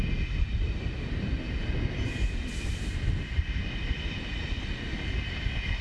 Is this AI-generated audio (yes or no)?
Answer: no